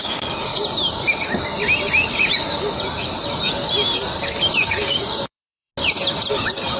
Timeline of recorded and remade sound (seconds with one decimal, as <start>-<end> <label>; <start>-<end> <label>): 0.0-0.5 remade; 0.5-4.6 recorded; 4.6-5.7 remade; 5.7-6.3 recorded; 6.3-6.8 remade